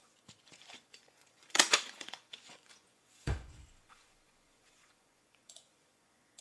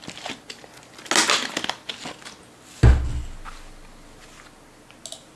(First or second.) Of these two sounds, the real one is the second